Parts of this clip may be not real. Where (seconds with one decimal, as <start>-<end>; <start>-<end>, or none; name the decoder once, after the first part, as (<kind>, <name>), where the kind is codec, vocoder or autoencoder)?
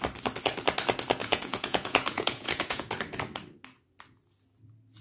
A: 1.2-2.9 (vocoder, Vocos)